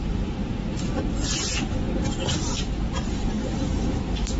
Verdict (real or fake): real